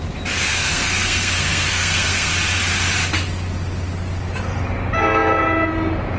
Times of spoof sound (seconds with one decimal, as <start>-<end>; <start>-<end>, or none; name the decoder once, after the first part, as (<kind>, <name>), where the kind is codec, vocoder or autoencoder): 0.5-2.3 (codec, SNAC)